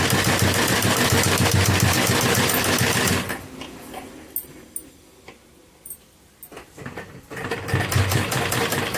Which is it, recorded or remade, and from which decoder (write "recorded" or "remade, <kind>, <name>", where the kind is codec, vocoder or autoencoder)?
recorded